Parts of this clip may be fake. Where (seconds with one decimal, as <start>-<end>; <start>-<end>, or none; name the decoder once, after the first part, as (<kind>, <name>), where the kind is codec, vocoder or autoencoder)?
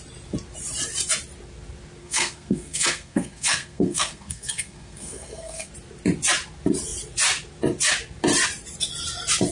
2.0-5.7 (codec, SNAC)